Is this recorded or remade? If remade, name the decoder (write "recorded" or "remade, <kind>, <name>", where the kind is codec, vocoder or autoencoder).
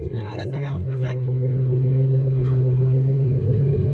remade, codec, SNAC